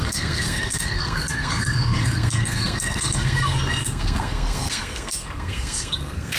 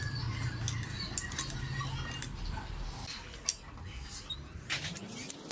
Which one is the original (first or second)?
second